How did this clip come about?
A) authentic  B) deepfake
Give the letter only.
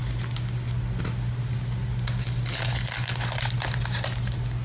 A